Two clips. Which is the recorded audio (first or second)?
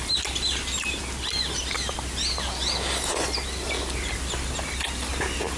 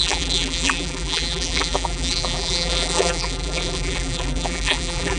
first